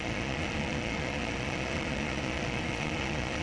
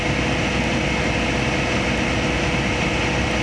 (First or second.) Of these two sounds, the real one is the second